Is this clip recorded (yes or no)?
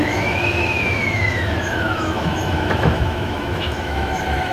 no